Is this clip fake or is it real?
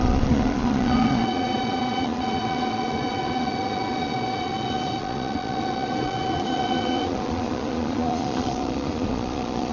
fake